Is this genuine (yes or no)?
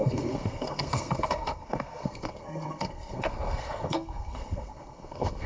no